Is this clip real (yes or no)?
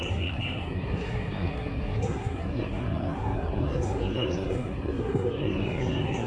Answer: no